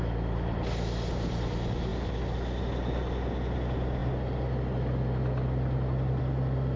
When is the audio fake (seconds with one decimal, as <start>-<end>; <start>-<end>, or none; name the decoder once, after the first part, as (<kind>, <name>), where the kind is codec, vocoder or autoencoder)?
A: none